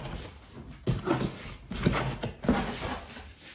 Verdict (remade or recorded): recorded